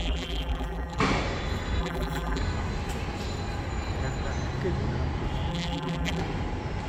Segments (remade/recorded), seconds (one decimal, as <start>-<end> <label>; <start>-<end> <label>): 0.0-1.0 remade; 1.0-1.8 recorded; 1.8-2.4 remade; 2.4-5.5 recorded; 5.5-6.2 remade; 6.2-6.9 recorded